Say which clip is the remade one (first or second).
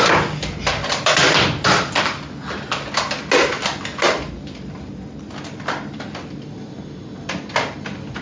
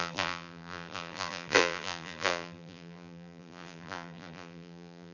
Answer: second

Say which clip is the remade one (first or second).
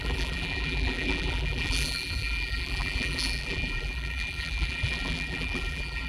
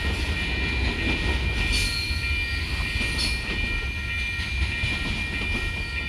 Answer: first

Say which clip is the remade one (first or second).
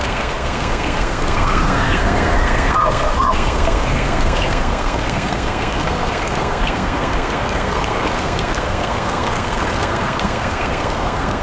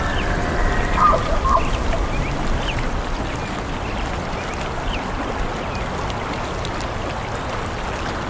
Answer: first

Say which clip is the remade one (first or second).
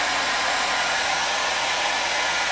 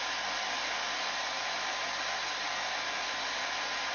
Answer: first